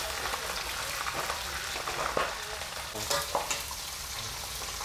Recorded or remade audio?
recorded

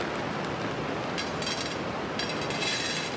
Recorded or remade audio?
recorded